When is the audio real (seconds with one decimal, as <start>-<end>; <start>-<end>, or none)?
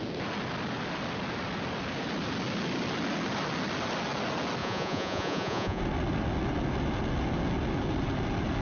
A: 0.0-4.6; 5.8-8.6